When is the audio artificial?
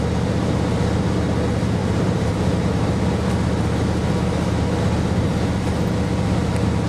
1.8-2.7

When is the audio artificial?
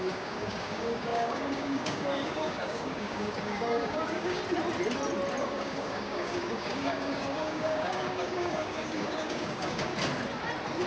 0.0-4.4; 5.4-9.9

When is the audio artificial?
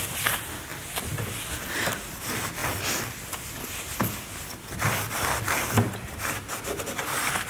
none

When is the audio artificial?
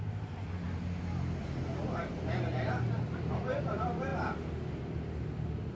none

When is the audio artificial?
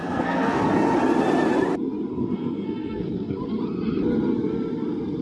0.0-0.6; 2.1-3.4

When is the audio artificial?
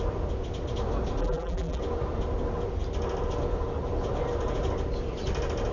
1.2-1.8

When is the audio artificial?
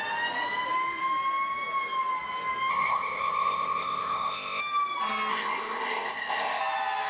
2.7-4.6; 5.3-6.6